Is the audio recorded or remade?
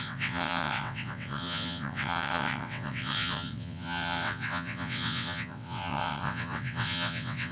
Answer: remade